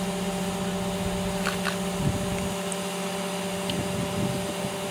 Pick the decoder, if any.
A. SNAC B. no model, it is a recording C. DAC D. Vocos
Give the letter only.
B